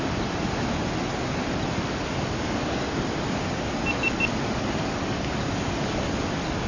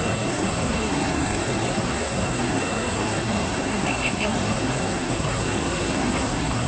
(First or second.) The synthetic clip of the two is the second